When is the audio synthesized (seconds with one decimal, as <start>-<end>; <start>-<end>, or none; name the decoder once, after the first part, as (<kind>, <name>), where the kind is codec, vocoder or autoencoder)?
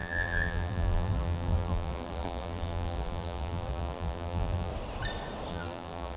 0.0-4.7 (vocoder, BigVGAN v2); 5.5-6.2